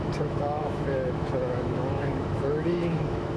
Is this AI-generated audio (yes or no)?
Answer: yes